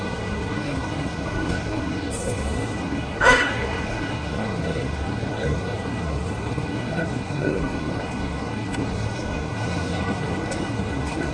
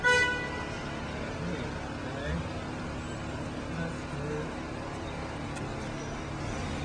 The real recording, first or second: second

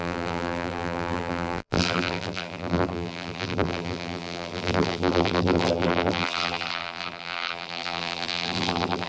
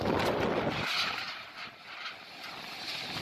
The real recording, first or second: second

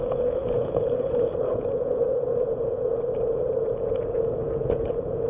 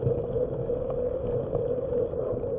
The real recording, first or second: second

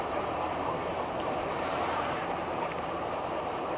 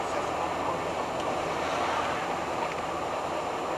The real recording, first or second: second